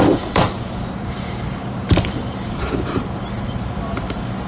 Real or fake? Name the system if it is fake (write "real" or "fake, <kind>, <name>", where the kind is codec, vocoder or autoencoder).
fake, vocoder, BigVGAN v2